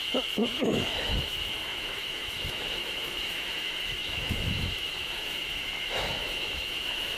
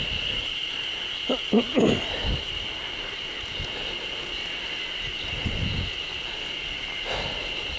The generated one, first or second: first